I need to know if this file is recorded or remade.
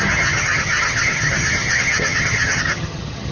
remade